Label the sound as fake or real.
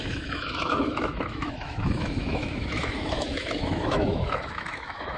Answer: fake